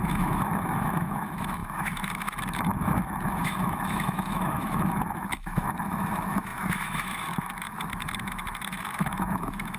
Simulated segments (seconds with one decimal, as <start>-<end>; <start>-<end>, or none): 0.0-9.8